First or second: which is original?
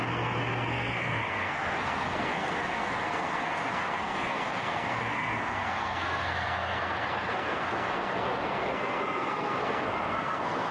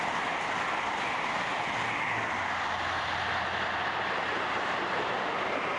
second